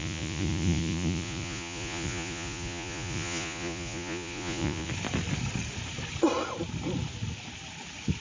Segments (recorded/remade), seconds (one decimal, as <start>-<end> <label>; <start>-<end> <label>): 0.0-4.9 remade; 4.9-8.2 recorded